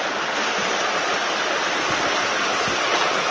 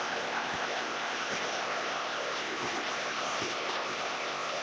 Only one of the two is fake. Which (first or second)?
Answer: second